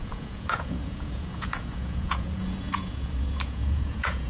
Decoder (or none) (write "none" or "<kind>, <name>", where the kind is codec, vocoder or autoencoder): vocoder, Vocos